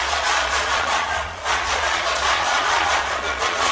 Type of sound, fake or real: fake